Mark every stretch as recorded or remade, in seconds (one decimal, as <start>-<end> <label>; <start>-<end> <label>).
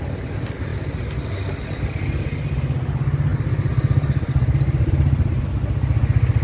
0.0-6.4 recorded